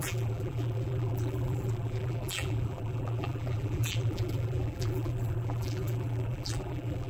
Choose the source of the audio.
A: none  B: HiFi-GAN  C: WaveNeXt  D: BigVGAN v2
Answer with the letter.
D